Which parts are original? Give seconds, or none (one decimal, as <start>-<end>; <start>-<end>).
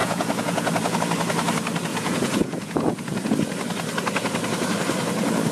1.0-1.9; 3.3-5.5